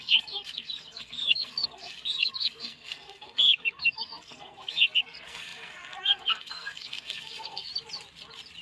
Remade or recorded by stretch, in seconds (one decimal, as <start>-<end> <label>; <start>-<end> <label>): 0.0-7.7 remade; 7.7-8.6 recorded